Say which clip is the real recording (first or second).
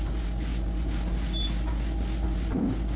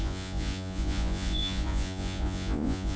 first